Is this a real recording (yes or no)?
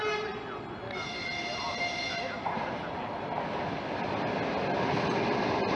yes